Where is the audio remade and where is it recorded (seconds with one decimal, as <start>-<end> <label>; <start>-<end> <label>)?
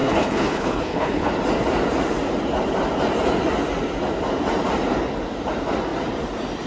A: 0.0-1.3 remade; 1.3-6.7 recorded